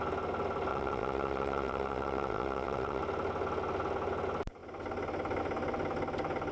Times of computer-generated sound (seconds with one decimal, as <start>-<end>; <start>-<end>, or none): 0.7-3.0